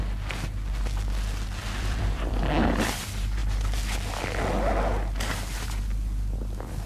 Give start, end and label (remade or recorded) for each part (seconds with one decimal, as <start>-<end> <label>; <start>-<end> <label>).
0.0-1.6 recorded; 1.6-2.4 remade; 2.4-6.9 recorded